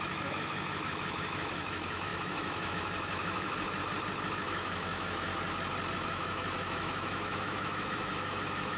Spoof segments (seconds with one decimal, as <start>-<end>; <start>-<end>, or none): 0.0-3.8; 4.3-5.3; 5.9-8.8